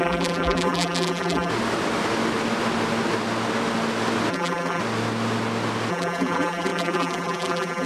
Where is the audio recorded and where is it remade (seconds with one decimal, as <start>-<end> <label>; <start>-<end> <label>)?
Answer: 0.0-1.5 remade; 1.5-4.3 recorded; 4.3-4.8 remade; 4.8-5.9 recorded; 5.9-7.9 remade